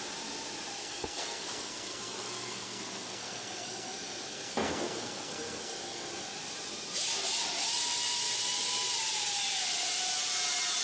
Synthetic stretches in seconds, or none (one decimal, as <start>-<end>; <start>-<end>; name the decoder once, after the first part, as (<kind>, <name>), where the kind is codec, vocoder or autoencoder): 0.8-6.1 (codec, SNAC)